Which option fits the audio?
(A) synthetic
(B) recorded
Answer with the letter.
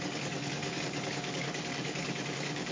A